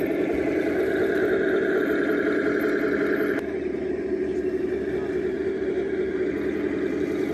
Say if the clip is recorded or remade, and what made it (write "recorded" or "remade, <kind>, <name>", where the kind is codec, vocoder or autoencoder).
remade, vocoder, BigVGAN v2